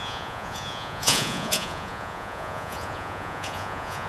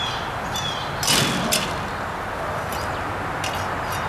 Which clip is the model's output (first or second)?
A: first